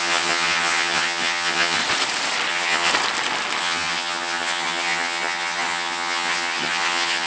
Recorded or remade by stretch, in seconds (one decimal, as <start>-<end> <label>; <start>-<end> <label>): 0.0-1.8 remade; 1.8-2.5 recorded; 2.5-2.9 remade; 2.9-3.6 recorded; 3.6-7.3 remade